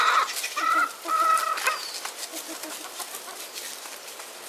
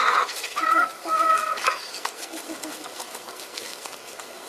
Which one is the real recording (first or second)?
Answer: first